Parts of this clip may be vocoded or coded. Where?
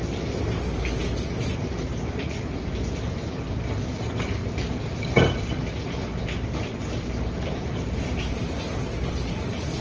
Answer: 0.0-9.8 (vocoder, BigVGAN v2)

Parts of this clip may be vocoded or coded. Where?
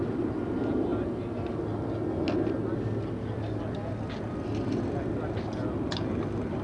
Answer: none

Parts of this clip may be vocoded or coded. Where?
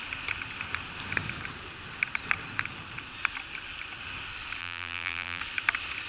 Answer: 4.6-5.4 (vocoder, BigVGAN v2)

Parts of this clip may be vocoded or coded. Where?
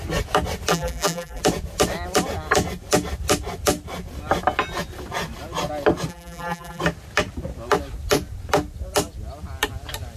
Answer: 0.7-1.4 (vocoder, BigVGAN v2); 6.1-6.8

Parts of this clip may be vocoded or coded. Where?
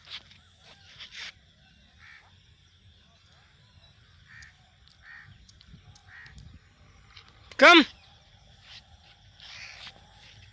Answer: 0.0-6.0 (vocoder, BigVGAN v2); 7.9-10.5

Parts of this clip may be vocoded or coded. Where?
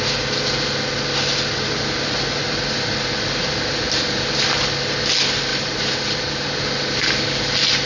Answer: 1.3-4.2 (vocoder, BigVGAN v2); 5.5-6.6